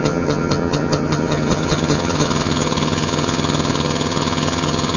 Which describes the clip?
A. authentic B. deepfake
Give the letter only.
B